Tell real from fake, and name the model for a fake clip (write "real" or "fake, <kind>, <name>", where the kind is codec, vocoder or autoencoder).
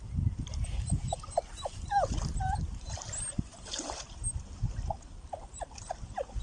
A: real